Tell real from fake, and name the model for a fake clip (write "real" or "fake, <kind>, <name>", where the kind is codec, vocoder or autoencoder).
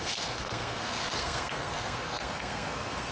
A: fake, codec, SNAC